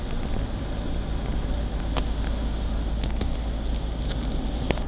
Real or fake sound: real